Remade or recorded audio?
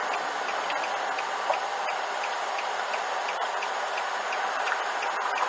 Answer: recorded